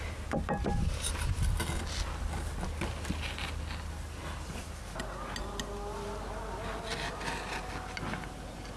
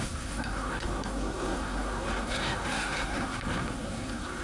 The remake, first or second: second